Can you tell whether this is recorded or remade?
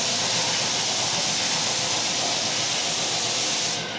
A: recorded